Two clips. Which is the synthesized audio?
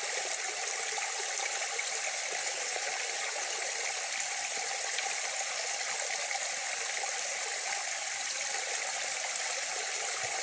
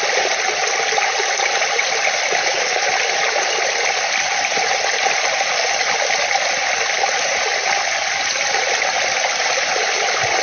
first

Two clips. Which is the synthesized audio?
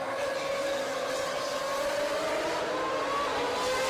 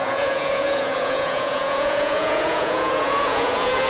second